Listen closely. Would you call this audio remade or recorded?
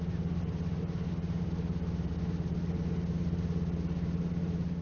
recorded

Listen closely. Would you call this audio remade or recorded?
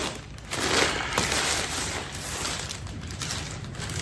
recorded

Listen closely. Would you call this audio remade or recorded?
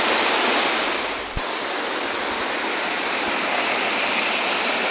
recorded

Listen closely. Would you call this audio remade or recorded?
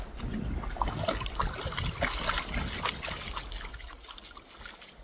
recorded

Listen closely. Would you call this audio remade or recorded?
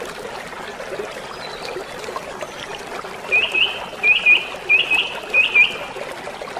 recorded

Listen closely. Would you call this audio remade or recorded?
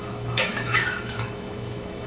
remade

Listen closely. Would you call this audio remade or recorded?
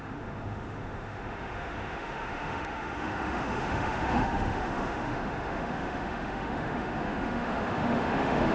remade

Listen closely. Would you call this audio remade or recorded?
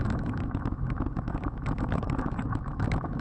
remade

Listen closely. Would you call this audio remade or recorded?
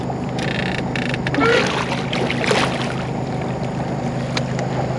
recorded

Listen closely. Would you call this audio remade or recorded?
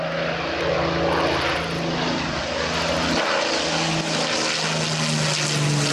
recorded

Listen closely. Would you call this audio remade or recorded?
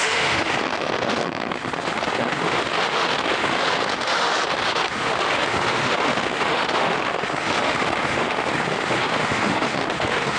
remade